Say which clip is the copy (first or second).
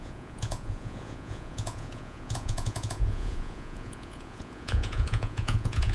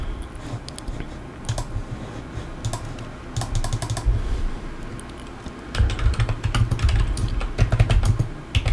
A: first